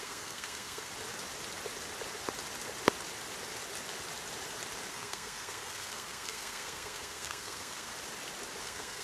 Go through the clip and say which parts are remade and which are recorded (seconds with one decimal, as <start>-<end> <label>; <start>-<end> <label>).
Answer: 0.0-0.9 remade; 0.9-4.9 recorded; 4.9-7.9 remade; 7.9-8.6 recorded; 8.6-9.0 remade